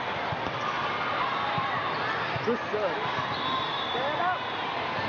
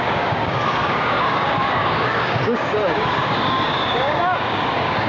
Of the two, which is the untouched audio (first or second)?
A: first